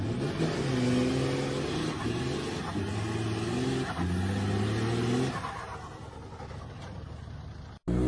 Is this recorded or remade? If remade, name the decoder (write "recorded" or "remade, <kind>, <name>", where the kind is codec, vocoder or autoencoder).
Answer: recorded